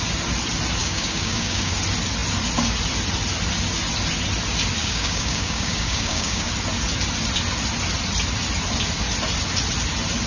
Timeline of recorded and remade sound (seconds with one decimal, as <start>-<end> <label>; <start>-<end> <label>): 0.0-0.8 recorded; 0.8-1.7 remade; 1.7-4.8 recorded; 4.8-6.5 remade; 6.5-10.3 recorded